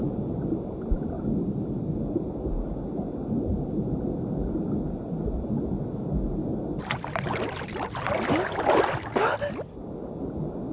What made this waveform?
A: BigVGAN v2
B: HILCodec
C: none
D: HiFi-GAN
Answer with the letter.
C